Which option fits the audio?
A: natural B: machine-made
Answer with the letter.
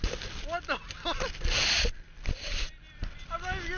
A